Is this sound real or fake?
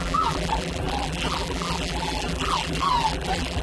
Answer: fake